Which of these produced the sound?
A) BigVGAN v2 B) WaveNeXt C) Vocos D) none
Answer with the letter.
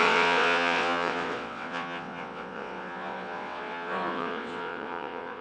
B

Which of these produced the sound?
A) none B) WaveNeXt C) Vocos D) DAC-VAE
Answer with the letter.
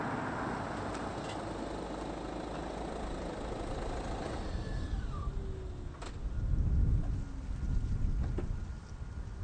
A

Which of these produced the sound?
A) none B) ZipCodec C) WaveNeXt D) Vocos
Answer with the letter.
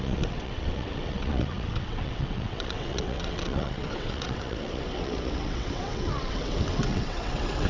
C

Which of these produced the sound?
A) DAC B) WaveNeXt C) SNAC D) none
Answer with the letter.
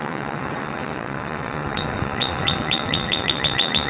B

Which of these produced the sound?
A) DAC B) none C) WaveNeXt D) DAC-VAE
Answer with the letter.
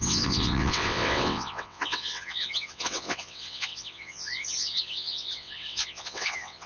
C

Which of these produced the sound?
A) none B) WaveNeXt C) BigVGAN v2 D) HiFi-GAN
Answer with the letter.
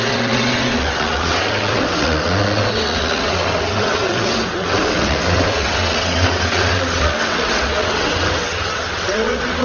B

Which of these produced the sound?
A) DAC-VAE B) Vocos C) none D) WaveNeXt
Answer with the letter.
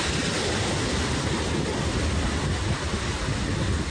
C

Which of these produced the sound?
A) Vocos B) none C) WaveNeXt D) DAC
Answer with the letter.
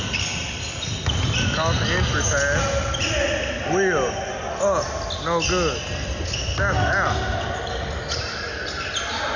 B